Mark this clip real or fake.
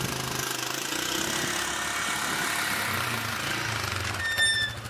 real